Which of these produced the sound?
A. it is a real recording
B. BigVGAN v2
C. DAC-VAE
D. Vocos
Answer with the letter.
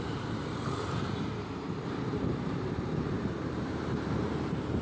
B